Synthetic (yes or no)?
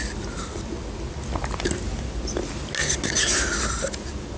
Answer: no